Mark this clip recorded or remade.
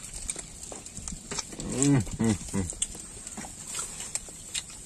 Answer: recorded